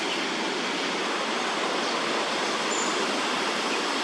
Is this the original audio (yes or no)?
yes